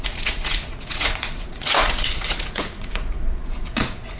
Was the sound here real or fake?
fake